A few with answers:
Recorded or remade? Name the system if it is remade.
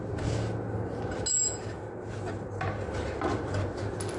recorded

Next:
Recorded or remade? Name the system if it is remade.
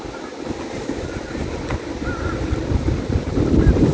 recorded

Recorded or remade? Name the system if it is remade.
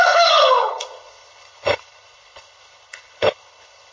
remade, codec, HILCodec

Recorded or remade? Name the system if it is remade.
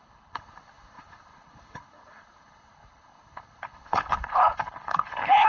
remade, codec, HILCodec